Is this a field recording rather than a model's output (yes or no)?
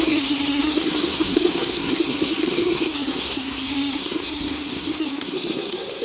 no